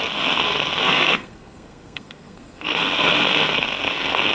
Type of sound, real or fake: fake